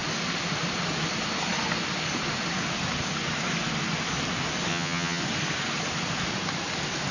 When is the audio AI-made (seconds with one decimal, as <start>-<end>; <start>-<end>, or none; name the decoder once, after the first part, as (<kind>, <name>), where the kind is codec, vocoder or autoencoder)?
4.7-5.2 (vocoder, HiFi-GAN)